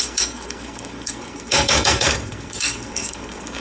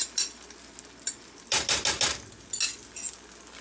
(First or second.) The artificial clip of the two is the first